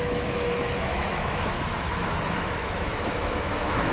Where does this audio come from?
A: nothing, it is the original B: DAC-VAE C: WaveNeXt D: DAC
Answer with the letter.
B